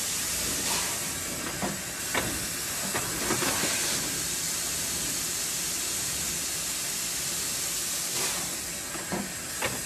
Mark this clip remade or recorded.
recorded